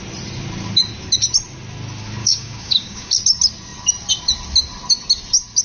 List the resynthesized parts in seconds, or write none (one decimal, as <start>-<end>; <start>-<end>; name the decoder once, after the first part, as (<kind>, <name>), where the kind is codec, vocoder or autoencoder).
2.2-3.1 (codec, DAC)